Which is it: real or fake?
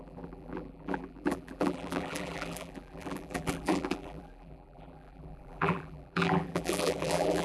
fake